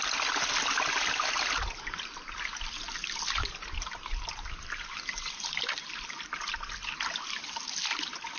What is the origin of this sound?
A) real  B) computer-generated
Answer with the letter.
A